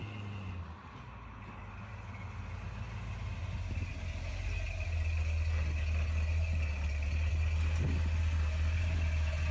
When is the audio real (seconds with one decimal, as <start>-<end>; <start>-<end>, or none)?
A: 0.0-9.5